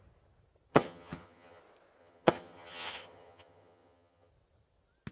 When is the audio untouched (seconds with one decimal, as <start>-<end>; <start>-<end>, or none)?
0.0-0.7; 1.6-2.0; 4.3-5.1